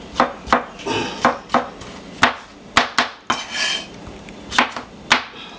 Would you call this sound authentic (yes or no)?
yes